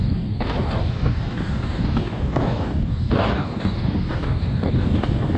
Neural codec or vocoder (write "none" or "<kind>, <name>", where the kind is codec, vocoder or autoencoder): codec, DAC